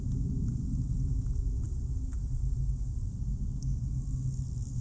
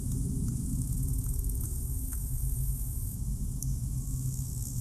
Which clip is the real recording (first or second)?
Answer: first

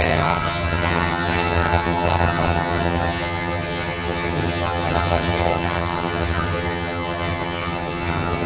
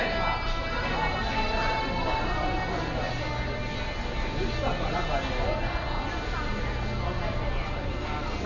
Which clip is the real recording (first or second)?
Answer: second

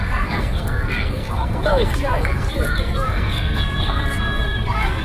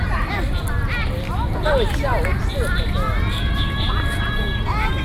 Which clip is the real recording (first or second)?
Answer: second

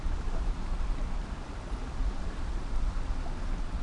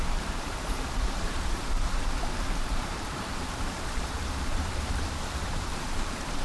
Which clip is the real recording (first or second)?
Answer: first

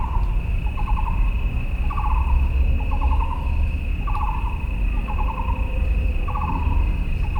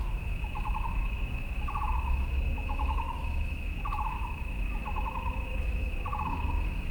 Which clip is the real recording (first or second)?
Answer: first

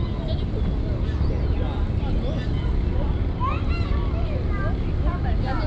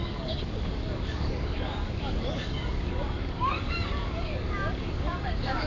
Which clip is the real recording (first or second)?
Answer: first